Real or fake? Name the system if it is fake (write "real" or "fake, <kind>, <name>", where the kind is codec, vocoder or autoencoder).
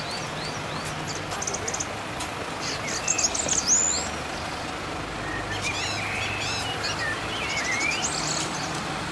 real